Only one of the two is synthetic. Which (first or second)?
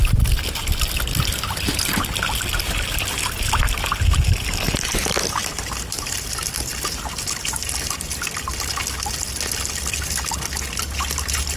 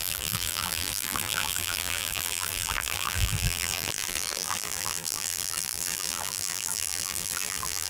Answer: second